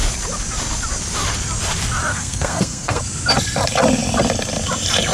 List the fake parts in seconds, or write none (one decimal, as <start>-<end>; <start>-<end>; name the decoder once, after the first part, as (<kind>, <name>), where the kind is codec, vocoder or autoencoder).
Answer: 2.1-3.0 (codec, SNAC)